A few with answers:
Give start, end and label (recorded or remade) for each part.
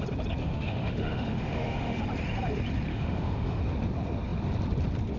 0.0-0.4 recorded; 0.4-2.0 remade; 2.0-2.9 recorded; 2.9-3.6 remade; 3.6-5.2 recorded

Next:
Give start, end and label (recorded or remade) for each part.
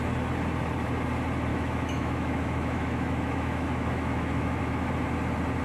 0.0-1.5 recorded; 1.5-4.9 remade; 4.9-5.6 recorded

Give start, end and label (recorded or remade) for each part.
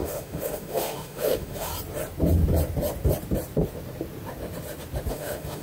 0.0-1.7 remade; 1.7-5.1 recorded; 5.1-5.6 remade